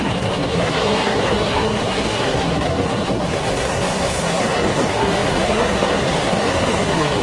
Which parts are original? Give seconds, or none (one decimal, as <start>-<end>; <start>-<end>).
none